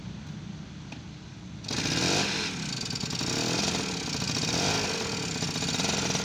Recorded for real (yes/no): yes